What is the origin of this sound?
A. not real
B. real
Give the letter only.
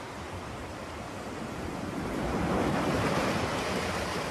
A